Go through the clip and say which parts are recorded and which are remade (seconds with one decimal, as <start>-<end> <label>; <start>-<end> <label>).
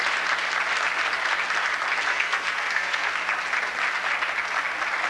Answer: 0.0-2.1 recorded; 2.1-3.1 remade; 3.1-5.1 recorded